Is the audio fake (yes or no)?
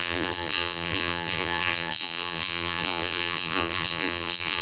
yes